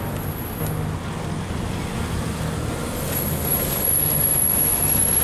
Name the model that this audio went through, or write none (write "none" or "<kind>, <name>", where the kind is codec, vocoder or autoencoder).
none